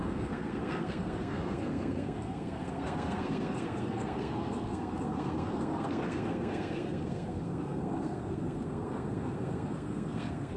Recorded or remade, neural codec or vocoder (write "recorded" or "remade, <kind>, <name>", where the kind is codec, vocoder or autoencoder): remade, codec, SNAC